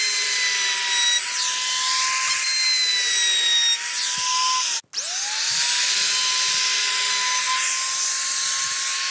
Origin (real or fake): real